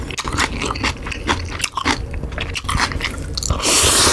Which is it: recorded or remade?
recorded